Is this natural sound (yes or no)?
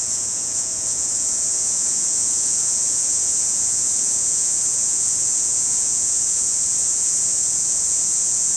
no